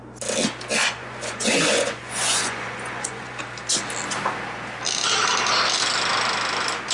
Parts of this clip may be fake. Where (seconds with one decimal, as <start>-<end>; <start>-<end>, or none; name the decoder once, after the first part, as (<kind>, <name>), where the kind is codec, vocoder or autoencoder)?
0.8-3.4 (vocoder, Vocos)